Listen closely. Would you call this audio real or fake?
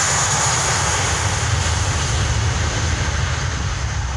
real